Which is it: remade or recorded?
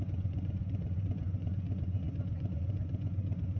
remade